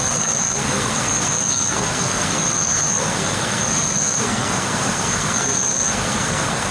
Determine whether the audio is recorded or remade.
remade